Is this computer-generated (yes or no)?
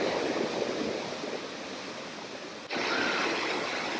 no